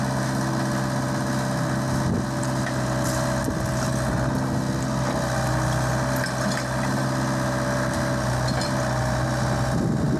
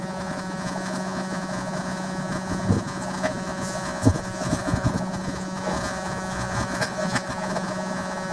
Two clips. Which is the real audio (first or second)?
first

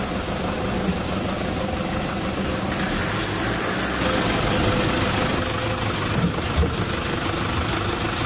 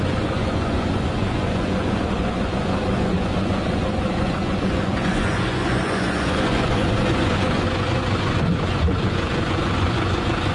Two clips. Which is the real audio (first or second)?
first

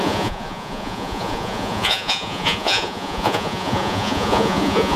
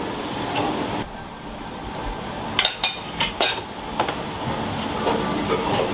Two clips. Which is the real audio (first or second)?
second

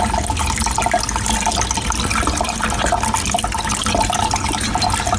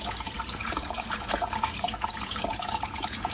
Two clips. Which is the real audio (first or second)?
first